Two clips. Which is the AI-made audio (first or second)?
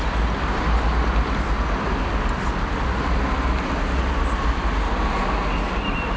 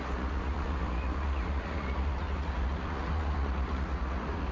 second